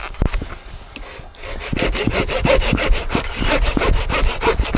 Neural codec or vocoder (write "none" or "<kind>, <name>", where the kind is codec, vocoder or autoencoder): none